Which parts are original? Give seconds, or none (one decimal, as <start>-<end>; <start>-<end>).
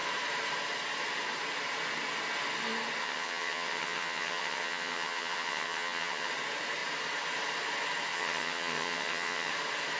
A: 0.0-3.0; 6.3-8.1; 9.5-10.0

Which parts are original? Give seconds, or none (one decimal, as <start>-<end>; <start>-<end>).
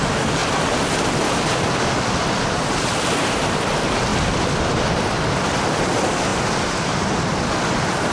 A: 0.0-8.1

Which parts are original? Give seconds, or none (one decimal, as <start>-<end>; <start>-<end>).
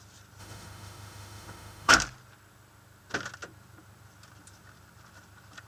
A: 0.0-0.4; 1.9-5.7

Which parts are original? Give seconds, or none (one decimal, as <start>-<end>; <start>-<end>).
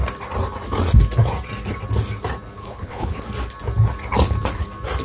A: 0.0-2.6; 3.2-5.0